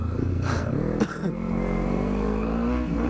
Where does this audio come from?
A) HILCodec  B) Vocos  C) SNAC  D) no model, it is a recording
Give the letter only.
C